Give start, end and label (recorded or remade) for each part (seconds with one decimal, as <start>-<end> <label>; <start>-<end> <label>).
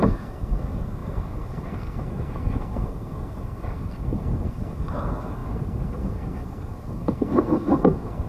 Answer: 0.0-8.3 remade